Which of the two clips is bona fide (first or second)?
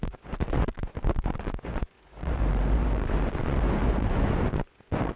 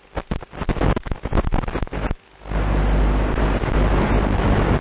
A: second